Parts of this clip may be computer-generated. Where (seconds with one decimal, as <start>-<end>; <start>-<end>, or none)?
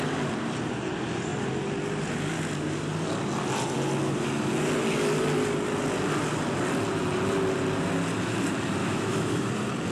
8.8-9.5